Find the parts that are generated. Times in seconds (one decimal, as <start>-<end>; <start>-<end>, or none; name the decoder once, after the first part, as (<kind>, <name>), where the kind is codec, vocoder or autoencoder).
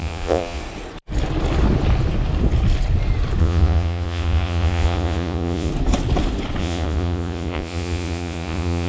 0.0-0.6 (vocoder, Vocos); 3.4-5.7; 6.6-8.9